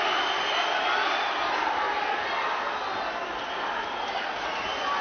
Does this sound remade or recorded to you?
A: recorded